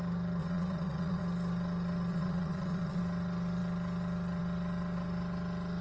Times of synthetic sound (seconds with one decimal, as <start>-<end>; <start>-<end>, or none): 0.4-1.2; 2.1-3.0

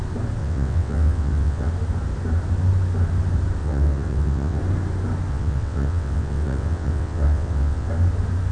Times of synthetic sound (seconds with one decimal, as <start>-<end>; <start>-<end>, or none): 0.4-1.7; 3.6-4.6; 5.3-7.9

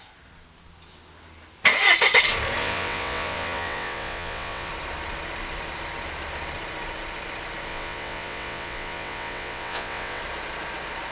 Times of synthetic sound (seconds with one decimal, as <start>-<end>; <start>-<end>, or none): 2.6-4.7; 7.7-10.2